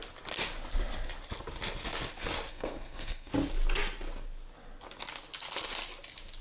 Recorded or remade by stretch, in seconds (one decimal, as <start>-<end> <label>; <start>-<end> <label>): 0.0-2.5 recorded; 2.5-3.3 remade; 3.3-6.4 recorded